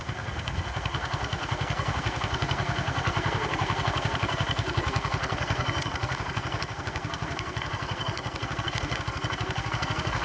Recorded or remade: remade